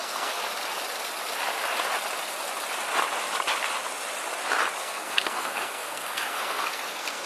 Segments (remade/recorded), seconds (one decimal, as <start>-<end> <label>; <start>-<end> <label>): 0.0-0.4 remade; 0.4-4.8 recorded; 4.8-7.3 remade